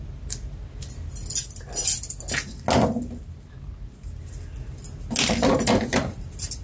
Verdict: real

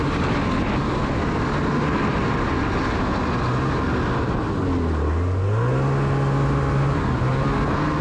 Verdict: real